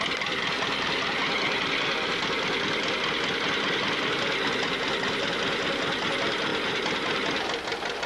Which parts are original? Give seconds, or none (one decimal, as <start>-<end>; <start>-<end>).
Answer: 0.0-8.1